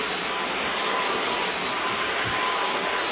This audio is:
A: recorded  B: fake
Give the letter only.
B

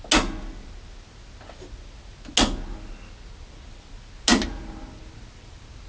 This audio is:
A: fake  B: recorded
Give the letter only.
B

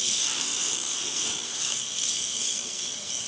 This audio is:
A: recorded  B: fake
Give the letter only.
B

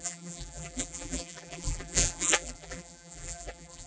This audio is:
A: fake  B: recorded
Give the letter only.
A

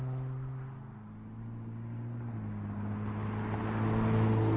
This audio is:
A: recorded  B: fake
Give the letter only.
A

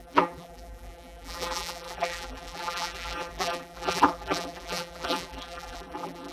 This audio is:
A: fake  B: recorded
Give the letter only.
A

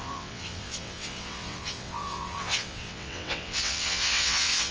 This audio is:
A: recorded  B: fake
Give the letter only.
B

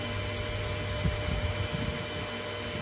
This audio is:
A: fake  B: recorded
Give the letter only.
B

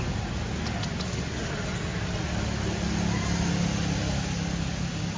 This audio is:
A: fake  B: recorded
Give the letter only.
B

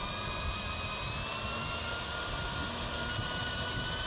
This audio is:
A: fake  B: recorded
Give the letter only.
B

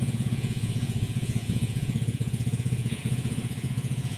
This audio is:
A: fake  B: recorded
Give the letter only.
A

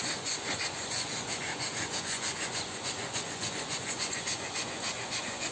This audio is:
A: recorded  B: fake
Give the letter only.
B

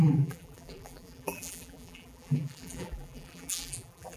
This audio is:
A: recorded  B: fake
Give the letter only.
B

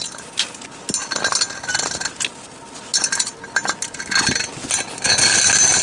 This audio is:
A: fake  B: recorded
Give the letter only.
B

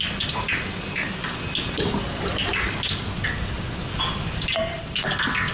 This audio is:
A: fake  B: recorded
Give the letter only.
B